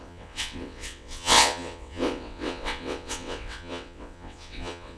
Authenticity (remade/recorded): remade